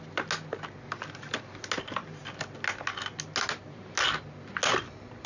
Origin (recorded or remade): recorded